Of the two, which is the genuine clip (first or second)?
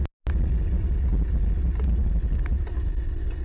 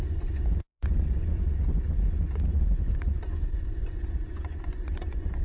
first